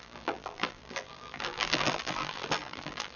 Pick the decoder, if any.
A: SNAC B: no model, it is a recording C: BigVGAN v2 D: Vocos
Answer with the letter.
C